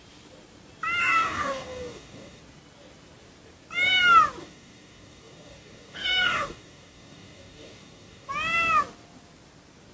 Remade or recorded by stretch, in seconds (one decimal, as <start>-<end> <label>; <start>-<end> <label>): 0.0-1.0 recorded; 1.0-2.4 remade; 2.4-4.4 recorded; 4.4-8.3 remade; 8.3-9.9 recorded